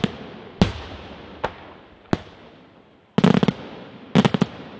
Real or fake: real